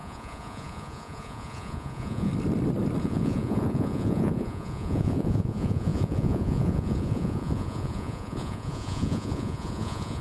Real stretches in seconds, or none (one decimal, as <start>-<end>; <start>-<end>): 2.3-3.0